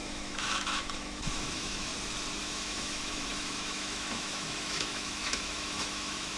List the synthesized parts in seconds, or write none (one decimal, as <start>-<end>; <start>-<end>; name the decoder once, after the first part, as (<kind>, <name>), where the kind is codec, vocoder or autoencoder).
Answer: 0.0-1.9 (autoencoder, DAC-VAE); 2.4-6.4